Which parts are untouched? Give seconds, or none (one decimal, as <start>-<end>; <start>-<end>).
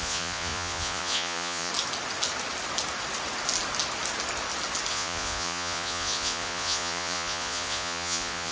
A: 1.7-4.9